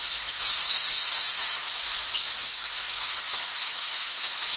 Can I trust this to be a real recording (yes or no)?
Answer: no